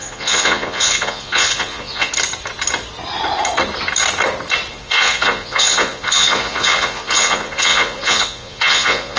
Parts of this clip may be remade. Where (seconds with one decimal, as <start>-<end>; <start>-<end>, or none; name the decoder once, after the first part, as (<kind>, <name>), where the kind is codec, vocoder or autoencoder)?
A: 0.0-2.1 (vocoder, Vocos); 4.7-9.2